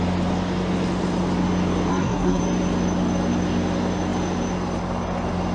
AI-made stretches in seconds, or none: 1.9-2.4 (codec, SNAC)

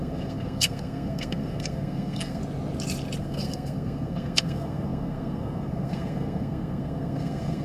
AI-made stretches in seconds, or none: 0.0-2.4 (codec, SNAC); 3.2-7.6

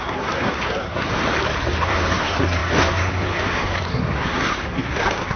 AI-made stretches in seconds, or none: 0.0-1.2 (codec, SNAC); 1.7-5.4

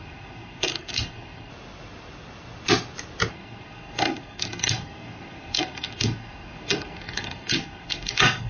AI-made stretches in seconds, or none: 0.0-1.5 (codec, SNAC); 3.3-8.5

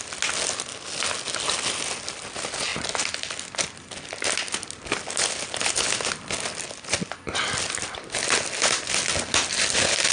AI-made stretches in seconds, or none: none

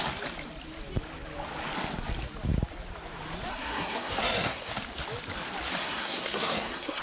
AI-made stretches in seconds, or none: 3.5-4.7 (codec, SNAC); 5.8-7.0

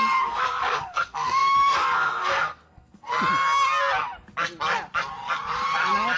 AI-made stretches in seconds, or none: 0.0-3.1 (codec, SNAC)